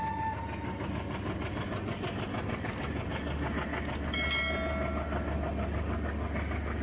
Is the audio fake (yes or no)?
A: no